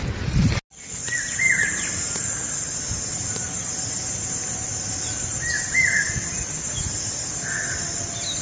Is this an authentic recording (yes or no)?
yes